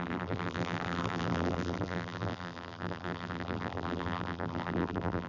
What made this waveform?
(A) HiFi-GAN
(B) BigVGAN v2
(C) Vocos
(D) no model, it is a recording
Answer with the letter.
B